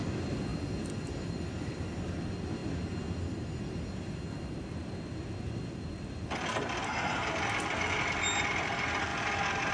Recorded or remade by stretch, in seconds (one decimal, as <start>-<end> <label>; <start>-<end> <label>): 0.0-9.7 recorded